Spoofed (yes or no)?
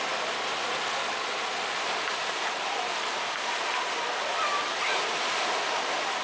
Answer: no